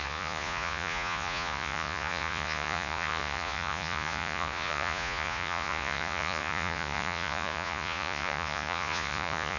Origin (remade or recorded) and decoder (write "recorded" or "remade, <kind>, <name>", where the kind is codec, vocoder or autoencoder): remade, vocoder, Vocos